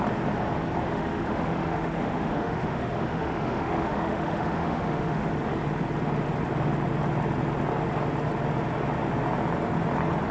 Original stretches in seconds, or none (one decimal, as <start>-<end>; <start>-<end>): 0.0-0.9; 5.3-10.3